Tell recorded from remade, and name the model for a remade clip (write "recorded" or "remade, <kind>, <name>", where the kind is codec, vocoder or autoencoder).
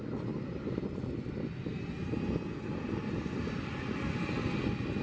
recorded